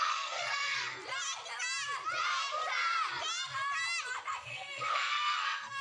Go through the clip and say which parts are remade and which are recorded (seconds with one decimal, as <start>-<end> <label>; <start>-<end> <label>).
0.0-1.0 remade; 1.0-4.5 recorded; 4.5-5.8 remade